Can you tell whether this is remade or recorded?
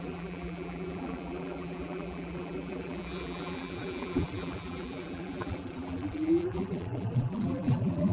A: remade